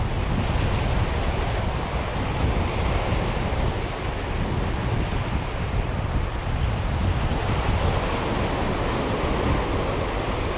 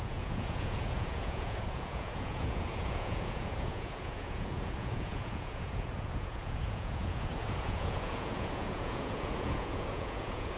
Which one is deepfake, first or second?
second